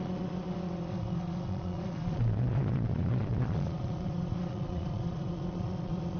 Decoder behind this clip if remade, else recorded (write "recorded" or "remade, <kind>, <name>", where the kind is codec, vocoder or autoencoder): remade, vocoder, Vocos